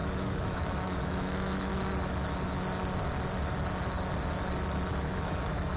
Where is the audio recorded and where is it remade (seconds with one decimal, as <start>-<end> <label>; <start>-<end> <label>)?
0.0-1.7 remade; 1.7-4.9 recorded; 4.9-5.8 remade